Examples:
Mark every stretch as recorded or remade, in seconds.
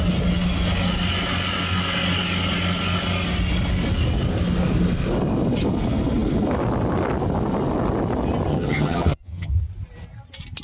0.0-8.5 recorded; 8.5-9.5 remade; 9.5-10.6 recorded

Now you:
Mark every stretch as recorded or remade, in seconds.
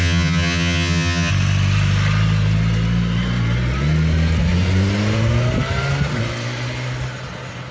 0.0-1.3 remade; 1.3-7.7 recorded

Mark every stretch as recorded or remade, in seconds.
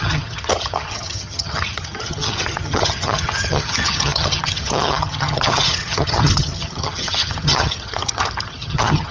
0.0-9.1 remade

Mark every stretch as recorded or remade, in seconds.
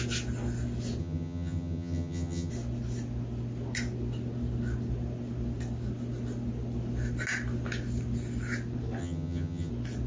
0.0-1.0 recorded; 1.0-2.5 remade; 2.5-9.0 recorded; 9.0-9.7 remade; 9.7-10.1 recorded